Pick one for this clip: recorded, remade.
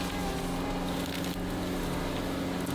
recorded